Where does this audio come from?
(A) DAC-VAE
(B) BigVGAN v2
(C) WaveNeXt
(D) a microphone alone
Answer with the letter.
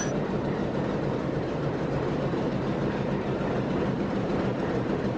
B